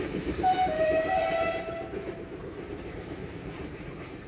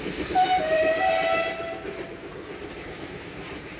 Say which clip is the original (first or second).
second